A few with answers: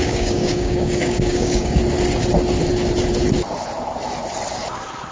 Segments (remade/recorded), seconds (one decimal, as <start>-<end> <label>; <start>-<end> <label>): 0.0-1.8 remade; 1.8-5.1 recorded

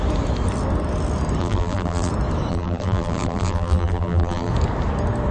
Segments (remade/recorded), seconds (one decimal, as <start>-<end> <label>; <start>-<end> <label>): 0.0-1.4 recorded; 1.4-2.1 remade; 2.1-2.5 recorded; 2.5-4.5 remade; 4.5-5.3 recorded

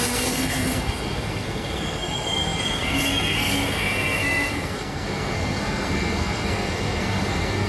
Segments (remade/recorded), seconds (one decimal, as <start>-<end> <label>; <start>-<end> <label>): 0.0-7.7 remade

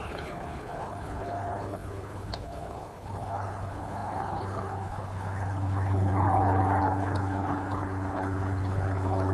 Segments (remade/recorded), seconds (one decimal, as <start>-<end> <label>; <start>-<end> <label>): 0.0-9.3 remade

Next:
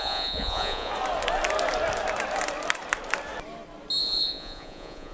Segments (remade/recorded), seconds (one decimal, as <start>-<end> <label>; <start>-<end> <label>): 0.0-0.9 remade; 0.9-4.0 recorded; 4.0-5.1 remade

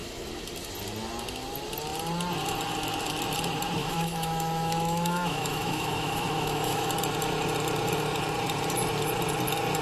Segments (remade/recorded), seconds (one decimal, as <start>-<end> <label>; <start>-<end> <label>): 0.0-3.8 recorded; 3.8-6.9 remade; 6.9-9.8 recorded

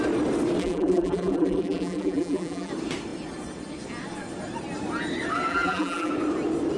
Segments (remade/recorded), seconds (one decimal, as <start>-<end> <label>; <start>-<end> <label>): 0.0-0.6 recorded; 0.6-2.7 remade; 2.7-5.5 recorded; 5.5-6.1 remade; 6.1-6.8 recorded